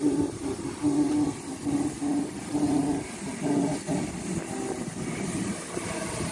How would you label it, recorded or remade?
recorded